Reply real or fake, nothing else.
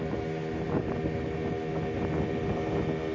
real